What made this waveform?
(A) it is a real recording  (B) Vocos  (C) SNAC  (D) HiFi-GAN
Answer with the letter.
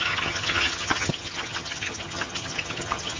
D